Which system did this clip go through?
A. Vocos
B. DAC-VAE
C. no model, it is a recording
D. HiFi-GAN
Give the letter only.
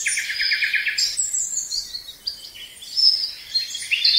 C